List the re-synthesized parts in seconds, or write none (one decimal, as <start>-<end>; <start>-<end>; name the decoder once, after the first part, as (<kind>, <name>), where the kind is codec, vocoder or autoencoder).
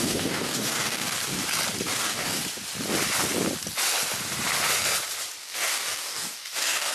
0.0-1.3 (codec, DAC); 1.9-2.4; 5.4-6.9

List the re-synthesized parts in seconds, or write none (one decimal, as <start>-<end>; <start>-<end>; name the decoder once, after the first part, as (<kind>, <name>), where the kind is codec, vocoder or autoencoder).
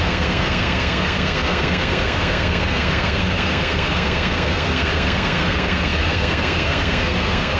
0.0-7.6 (codec, SNAC)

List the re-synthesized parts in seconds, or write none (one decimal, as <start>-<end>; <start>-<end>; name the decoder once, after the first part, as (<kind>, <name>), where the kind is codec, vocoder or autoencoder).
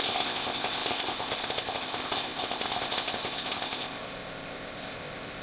0.0-5.4 (codec, ZipCodec)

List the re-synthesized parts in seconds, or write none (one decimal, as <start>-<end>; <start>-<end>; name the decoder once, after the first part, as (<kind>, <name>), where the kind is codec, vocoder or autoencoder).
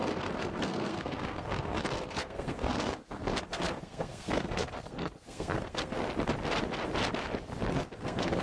0.0-6.0 (codec, SNAC); 7.7-8.4